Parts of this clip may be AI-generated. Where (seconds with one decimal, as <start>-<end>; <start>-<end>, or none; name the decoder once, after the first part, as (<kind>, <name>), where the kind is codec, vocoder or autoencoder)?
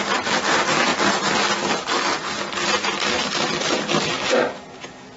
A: none